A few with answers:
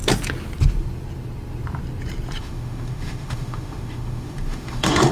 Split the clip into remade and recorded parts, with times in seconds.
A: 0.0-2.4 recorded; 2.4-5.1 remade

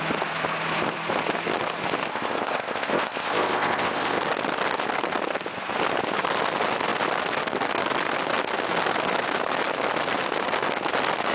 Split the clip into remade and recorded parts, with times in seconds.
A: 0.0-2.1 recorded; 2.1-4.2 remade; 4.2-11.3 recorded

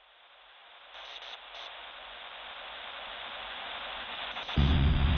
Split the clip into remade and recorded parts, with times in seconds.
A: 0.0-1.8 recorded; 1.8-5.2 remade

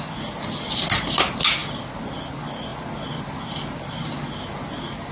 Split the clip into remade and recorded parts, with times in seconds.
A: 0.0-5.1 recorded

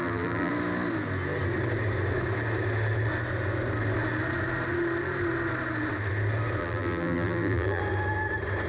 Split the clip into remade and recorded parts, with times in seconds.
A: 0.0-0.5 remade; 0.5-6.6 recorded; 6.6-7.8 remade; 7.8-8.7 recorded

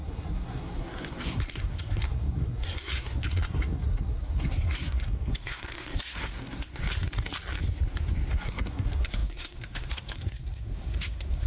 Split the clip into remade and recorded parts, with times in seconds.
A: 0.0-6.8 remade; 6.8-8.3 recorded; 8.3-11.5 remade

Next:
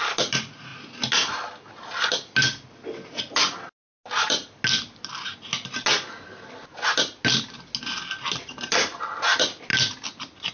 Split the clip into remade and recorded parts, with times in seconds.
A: 0.0-10.5 recorded